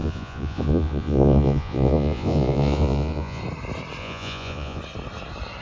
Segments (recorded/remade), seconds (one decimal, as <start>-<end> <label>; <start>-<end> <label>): 0.0-3.4 remade; 3.4-4.0 recorded; 4.0-4.8 remade; 4.8-5.6 recorded